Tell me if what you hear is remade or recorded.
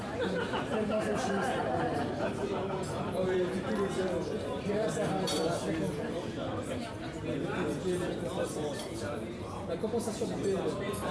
remade